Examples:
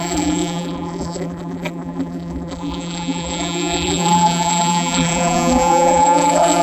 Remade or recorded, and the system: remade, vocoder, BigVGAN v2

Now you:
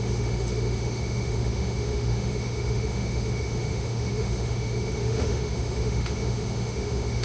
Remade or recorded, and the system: remade, autoencoder, DAC-VAE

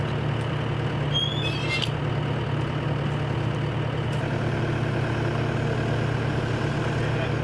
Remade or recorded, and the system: recorded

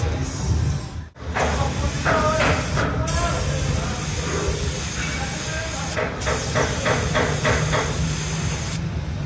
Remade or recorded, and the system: recorded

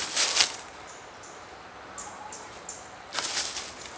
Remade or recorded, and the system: recorded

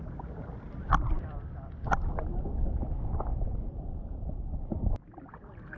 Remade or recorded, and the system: remade, vocoder, BigVGAN v2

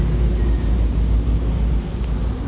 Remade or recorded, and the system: recorded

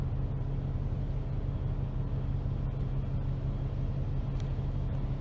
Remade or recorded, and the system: recorded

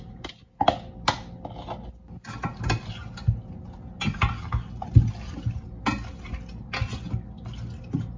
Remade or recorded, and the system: recorded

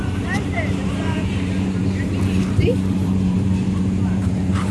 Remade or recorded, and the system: remade, vocoder, BigVGAN v2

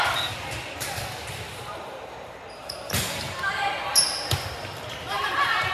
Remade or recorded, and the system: remade, vocoder, BigVGAN v2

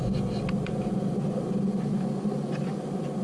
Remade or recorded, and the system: recorded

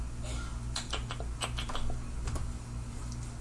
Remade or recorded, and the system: recorded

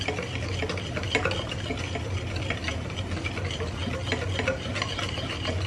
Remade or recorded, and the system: recorded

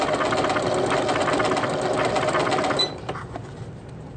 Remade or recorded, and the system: recorded